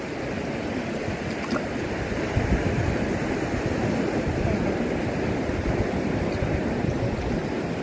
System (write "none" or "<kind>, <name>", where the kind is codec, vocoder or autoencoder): none